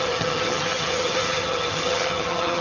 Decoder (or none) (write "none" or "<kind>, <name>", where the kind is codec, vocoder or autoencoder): vocoder, HiFi-GAN